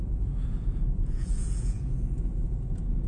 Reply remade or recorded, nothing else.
remade